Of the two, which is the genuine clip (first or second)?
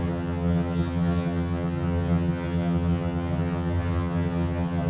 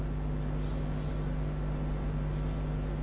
second